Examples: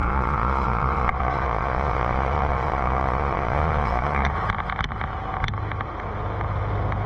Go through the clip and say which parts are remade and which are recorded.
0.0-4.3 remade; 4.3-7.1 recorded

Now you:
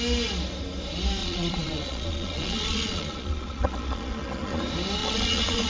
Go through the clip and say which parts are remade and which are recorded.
0.0-1.2 recorded; 1.2-4.6 remade; 4.6-5.0 recorded; 5.0-5.7 remade

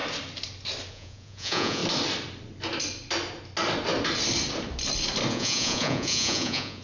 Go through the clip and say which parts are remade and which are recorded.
0.0-0.9 recorded; 0.9-1.8 remade; 1.8-5.3 recorded; 5.3-6.8 remade

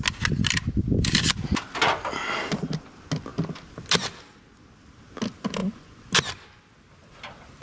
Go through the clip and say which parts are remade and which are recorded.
0.0-5.6 recorded; 5.6-6.1 remade; 6.1-7.6 recorded

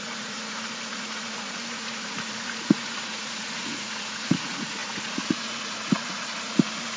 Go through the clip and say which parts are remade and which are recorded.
0.0-7.0 remade

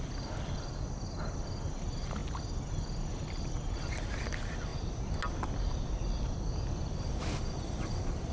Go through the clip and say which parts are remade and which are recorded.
0.0-8.3 recorded

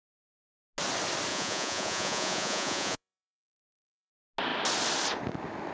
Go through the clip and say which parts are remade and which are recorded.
0.0-1.3 recorded; 1.3-4.1 remade; 4.1-5.7 recorded